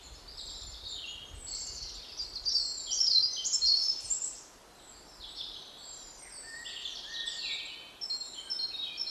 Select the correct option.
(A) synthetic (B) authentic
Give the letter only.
B